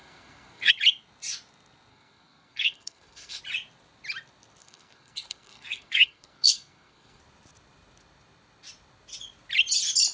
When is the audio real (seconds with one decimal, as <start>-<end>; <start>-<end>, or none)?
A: 0.7-1.9; 3.4-4.6; 7.2-10.1